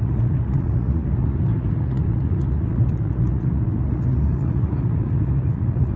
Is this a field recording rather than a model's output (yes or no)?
no